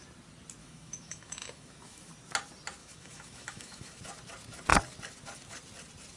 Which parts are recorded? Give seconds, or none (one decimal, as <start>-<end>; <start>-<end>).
0.0-0.6; 2.1-2.8; 4.0-6.2